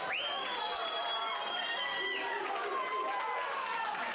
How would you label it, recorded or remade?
recorded